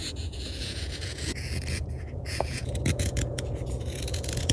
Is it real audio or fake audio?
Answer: fake